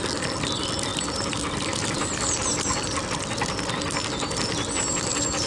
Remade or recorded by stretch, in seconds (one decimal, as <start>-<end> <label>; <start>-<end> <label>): 0.0-5.5 recorded